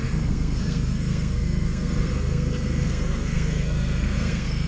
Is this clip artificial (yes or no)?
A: yes